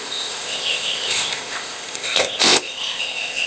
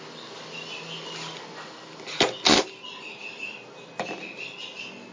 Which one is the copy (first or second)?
first